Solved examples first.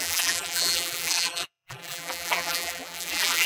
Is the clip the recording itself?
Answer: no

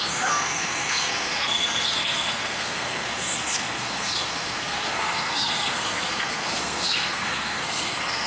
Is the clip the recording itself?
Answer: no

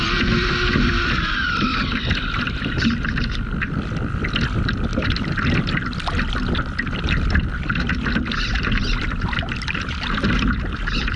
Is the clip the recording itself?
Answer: no